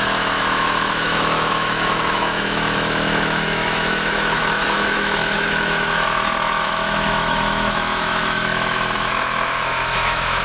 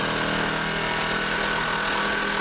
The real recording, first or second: second